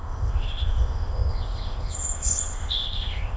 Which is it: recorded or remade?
remade